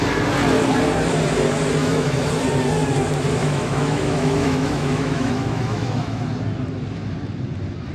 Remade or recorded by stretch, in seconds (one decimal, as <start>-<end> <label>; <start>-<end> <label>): 0.0-1.8 recorded; 1.8-2.3 remade; 2.3-3.4 recorded; 3.4-6.2 remade; 6.2-7.9 recorded